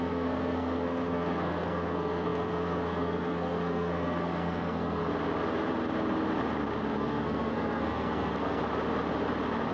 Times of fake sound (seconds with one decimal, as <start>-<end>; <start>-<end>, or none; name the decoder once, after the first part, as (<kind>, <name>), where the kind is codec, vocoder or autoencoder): 0.0-5.0 (codec, SNAC); 6.9-8.6